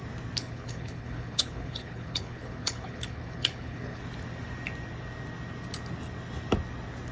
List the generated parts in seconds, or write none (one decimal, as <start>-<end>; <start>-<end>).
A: 0.4-4.0